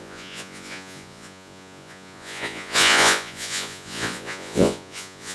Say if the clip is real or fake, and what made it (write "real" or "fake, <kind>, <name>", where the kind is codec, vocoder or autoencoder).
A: fake, vocoder, Vocos